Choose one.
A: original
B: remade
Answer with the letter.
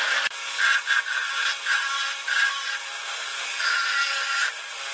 A